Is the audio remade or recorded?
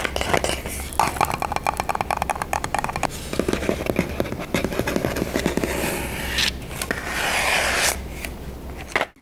recorded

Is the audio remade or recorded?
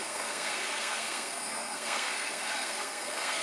remade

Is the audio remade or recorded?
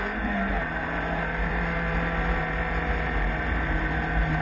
remade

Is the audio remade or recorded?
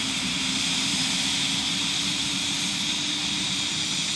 remade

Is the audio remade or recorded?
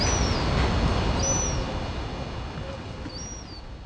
recorded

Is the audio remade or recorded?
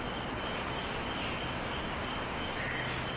recorded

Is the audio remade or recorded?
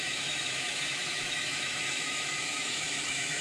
remade